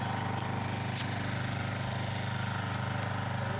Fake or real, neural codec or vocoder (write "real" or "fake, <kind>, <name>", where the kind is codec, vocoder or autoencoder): real